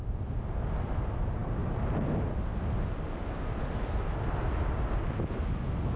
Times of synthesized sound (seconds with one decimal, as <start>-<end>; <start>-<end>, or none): none